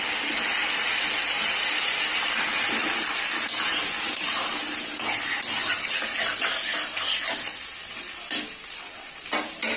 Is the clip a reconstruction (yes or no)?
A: no